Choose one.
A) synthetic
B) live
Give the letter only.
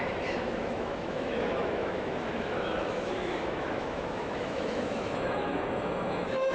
A